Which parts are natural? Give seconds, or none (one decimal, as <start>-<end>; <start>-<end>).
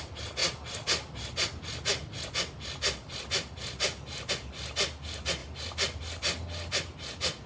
0.0-7.5